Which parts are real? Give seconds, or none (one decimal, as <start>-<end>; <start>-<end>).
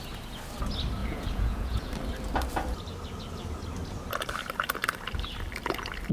0.0-1.0; 1.9-6.1